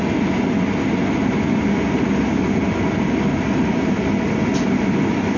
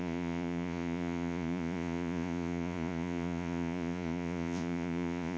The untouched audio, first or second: first